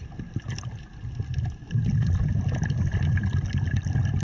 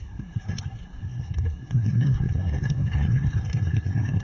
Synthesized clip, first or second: second